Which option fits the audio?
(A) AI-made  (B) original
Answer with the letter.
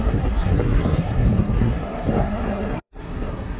A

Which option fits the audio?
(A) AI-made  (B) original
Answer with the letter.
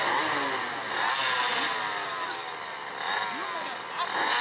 B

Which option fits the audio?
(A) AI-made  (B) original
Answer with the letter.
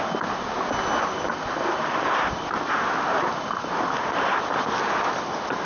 B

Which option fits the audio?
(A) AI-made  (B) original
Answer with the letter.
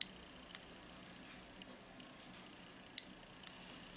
B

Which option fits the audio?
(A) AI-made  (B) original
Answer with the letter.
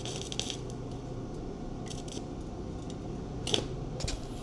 B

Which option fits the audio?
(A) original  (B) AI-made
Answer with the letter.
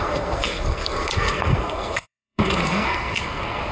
B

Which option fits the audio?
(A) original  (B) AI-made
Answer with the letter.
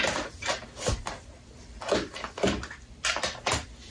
B